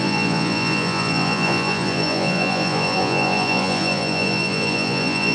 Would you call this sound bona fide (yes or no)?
no